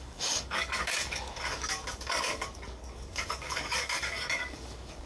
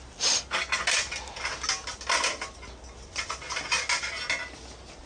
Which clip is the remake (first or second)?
first